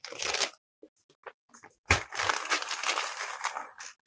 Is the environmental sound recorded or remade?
recorded